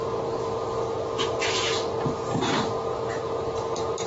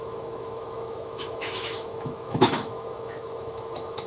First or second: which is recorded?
first